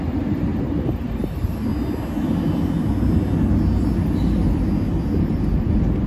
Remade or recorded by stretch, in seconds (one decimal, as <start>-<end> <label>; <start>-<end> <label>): 0.0-1.7 remade; 1.7-5.2 recorded; 5.2-6.1 remade